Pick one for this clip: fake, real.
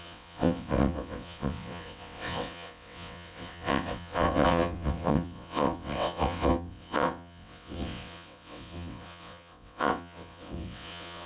fake